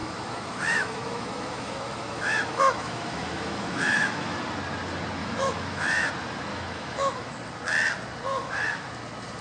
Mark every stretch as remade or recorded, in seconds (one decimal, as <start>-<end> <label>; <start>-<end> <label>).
0.0-4.4 remade; 4.4-5.2 recorded; 5.2-6.1 remade; 6.1-6.5 recorded; 6.5-7.3 remade; 7.3-8.3 recorded; 8.3-8.9 remade; 8.9-9.4 recorded